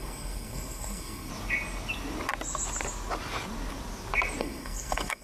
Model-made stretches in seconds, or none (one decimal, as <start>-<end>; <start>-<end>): 0.0-1.3; 4.4-5.2